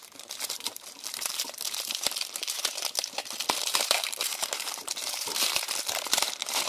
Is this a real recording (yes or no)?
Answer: no